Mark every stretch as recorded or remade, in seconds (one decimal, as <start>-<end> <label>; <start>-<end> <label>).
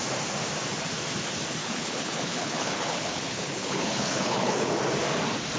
0.0-1.6 recorded; 1.6-4.7 remade; 4.7-5.6 recorded